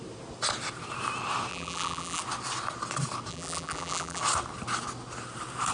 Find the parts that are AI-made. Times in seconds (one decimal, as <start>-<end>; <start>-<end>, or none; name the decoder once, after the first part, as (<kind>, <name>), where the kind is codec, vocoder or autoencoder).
1.5-2.2 (vocoder, BigVGAN v2); 3.3-4.2